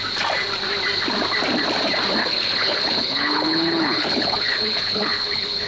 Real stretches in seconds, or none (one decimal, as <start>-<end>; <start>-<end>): 0.0-2.2